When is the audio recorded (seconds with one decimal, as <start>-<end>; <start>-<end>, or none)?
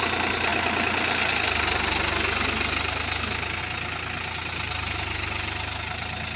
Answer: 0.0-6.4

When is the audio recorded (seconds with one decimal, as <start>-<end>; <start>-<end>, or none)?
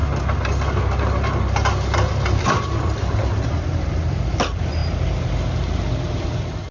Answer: 0.0-2.4; 4.8-6.2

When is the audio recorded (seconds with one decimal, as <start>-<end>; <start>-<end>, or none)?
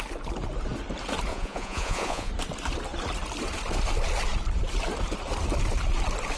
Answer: 0.0-1.3; 2.3-6.4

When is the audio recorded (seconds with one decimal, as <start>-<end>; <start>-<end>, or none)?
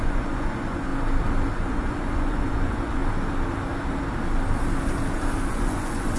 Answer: 0.9-1.5; 3.0-5.5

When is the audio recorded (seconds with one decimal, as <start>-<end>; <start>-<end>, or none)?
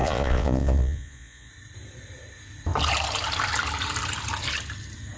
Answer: 1.5-5.2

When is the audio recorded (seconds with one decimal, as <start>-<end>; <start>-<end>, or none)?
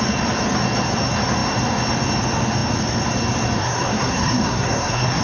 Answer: 0.0-3.6